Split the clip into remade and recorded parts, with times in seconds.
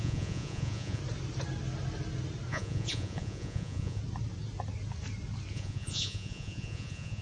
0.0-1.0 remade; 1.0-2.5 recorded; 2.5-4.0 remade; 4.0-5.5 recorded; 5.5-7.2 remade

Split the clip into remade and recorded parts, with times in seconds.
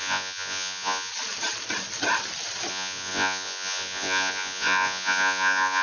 0.0-1.1 remade; 1.1-2.7 recorded; 2.7-5.8 remade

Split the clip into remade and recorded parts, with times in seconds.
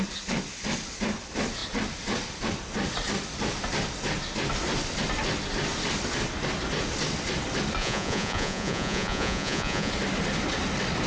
0.0-7.8 recorded; 7.8-9.9 remade; 9.9-11.1 recorded